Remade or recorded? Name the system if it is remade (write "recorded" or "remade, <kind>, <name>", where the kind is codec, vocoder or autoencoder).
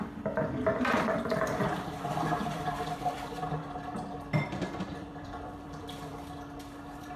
remade, vocoder, BigVGAN v2